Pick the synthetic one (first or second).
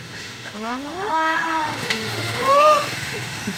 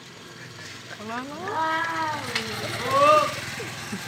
first